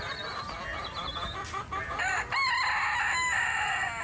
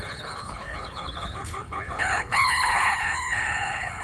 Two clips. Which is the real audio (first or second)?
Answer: first